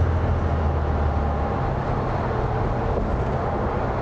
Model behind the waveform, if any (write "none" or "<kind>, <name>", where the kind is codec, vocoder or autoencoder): none